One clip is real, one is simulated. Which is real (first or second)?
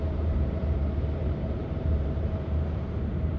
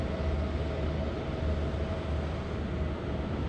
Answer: second